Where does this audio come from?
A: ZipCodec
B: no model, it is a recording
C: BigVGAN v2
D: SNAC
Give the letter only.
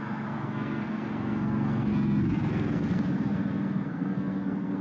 D